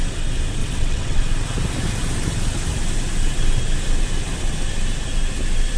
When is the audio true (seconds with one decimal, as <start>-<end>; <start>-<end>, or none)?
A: 0.0-0.6; 1.2-5.8